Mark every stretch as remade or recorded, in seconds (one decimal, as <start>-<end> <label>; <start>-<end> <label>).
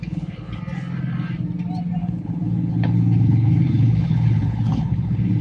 0.0-0.6 remade; 0.6-2.0 recorded; 2.0-5.4 remade